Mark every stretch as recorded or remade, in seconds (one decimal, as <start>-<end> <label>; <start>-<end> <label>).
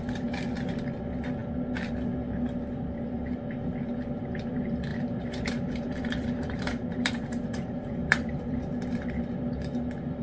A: 0.0-4.9 recorded; 4.9-8.6 remade; 8.6-10.2 recorded